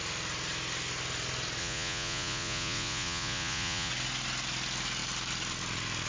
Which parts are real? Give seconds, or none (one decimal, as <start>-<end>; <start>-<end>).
0.0-1.6; 3.9-6.1